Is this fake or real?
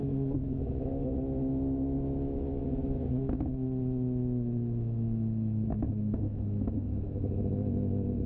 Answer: fake